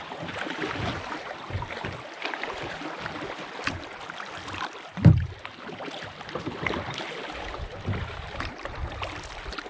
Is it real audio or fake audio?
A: real